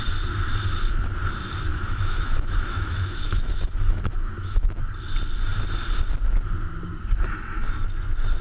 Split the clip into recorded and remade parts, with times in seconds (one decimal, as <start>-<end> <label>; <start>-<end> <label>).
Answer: 0.0-1.7 recorded; 1.7-4.7 remade; 4.7-8.4 recorded